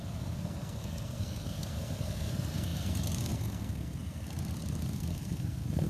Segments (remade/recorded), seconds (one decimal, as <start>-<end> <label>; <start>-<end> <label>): 0.0-5.9 remade